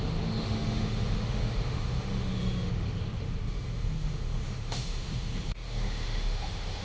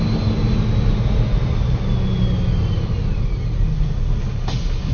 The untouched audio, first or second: second